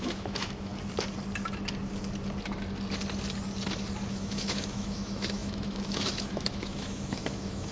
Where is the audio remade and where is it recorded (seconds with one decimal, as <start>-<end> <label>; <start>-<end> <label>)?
0.0-0.7 remade; 0.7-4.1 recorded; 4.1-7.7 remade